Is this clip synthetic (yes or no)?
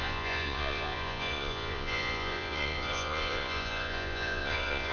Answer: yes